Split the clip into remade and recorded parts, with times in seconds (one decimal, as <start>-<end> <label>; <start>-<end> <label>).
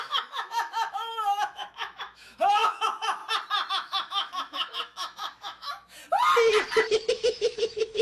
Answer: 0.0-3.2 remade; 3.2-3.7 recorded; 3.7-6.0 remade; 6.0-7.1 recorded; 7.1-8.0 remade